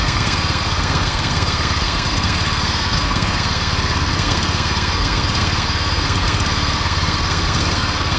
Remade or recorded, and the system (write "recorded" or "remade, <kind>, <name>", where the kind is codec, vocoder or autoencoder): remade, codec, SNAC